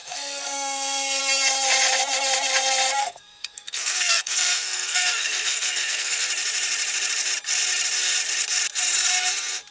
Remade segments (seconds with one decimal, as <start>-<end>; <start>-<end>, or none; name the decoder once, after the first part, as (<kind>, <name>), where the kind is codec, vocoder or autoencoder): 0.0-1.2 (codec, SNAC); 3.0-6.3